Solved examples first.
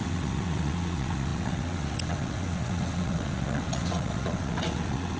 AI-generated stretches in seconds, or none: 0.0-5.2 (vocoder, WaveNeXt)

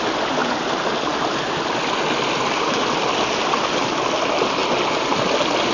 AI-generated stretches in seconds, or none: none

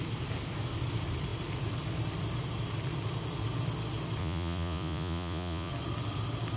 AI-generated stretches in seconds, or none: 4.2-5.7 (vocoder, Vocos)

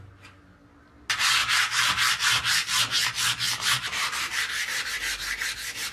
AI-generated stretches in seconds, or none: 1.4-4.9 (vocoder, BigVGAN v2)

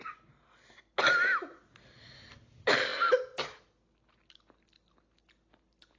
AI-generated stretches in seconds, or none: none

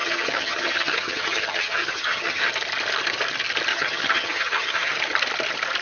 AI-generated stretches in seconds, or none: 0.0-2.5 (vocoder, HiFi-GAN); 3.7-4.9